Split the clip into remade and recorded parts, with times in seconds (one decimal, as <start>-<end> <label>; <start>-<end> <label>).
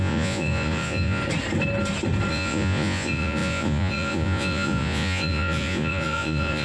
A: 0.0-1.2 remade; 1.2-2.3 recorded; 2.3-6.6 remade